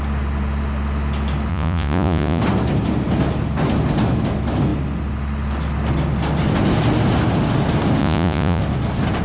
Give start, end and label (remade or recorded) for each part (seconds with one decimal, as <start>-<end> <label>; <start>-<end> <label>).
0.0-1.5 recorded; 1.5-2.4 remade; 2.4-8.0 recorded; 8.0-8.6 remade; 8.6-9.2 recorded